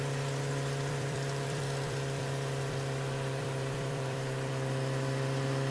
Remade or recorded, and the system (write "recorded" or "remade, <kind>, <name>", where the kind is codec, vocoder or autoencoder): remade, vocoder, BigVGAN v2